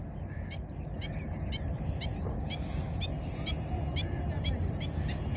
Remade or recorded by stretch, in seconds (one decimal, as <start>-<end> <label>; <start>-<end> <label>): 0.0-5.4 recorded